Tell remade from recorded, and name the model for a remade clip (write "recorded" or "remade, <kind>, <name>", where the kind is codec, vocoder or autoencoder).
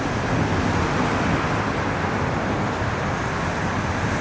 recorded